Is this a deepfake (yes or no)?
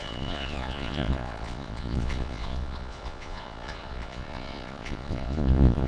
yes